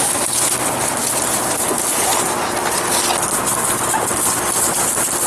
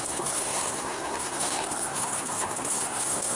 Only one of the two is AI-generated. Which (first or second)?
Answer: second